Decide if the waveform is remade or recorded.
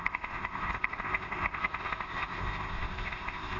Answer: remade